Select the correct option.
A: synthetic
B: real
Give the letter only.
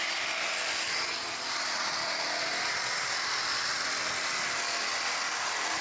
B